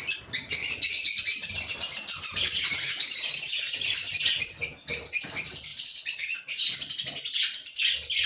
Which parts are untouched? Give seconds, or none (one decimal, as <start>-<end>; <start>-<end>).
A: 0.0-1.3; 4.1-5.7; 6.6-8.3